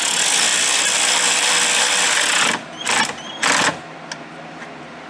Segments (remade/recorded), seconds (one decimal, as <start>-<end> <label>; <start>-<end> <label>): 0.0-0.5 recorded; 0.5-3.3 remade; 3.3-5.1 recorded